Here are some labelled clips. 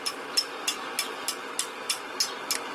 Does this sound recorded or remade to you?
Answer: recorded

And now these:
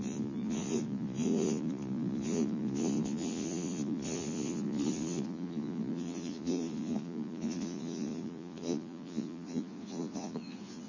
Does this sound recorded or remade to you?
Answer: remade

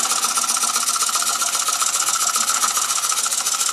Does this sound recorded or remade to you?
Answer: recorded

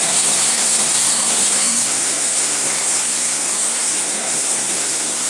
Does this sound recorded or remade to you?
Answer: remade